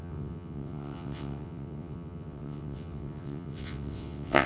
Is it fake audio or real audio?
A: fake